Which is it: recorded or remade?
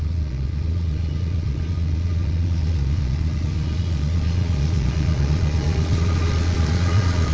remade